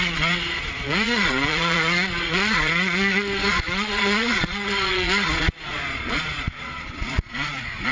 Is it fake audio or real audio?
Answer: fake